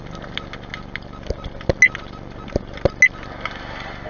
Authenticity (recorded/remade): recorded